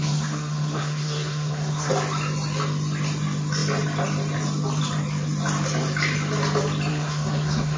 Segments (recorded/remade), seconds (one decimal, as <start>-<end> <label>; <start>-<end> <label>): 0.0-1.9 remade; 1.9-6.9 recorded; 6.9-7.8 remade